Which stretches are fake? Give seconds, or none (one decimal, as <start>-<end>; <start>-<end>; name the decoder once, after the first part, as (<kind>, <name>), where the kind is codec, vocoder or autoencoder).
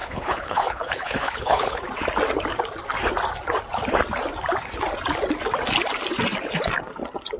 0.0-1.8 (codec, HILCodec)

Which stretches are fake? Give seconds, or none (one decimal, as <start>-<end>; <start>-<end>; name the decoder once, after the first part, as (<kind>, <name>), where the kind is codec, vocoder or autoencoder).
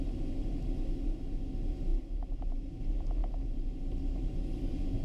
none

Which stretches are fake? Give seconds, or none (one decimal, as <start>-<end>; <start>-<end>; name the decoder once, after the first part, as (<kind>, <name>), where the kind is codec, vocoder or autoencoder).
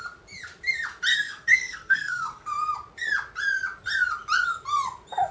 1.1-2.5 (codec, SNAC)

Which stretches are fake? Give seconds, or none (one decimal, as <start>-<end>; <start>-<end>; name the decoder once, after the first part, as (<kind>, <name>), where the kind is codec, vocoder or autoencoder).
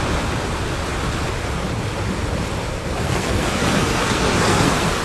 2.7-5.0 (codec, SNAC)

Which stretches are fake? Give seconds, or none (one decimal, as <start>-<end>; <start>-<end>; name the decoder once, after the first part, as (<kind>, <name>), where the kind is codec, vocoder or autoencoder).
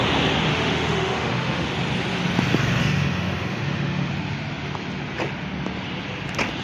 0.5-1.7 (autoencoder, DAC-VAE); 2.8-4.1